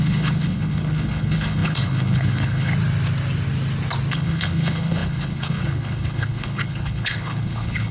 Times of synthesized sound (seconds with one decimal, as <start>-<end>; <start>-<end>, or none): 0.0-2.7; 4.1-7.9